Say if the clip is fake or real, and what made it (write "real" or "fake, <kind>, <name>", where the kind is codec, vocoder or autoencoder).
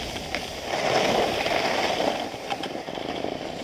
real